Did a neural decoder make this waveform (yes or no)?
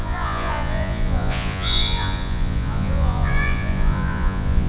yes